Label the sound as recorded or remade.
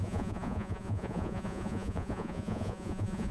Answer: remade